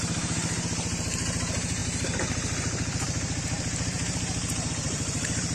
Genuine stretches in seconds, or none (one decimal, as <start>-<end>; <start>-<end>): none